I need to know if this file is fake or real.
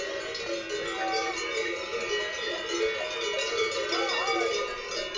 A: real